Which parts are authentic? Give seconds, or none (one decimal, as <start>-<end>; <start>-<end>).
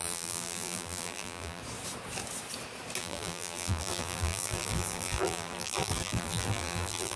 1.6-3.0